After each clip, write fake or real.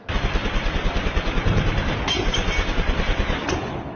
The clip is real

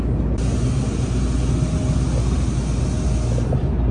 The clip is real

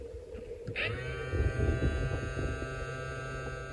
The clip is real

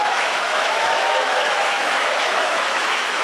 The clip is fake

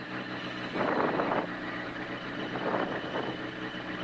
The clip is real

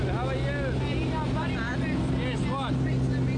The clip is real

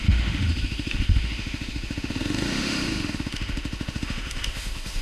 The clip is fake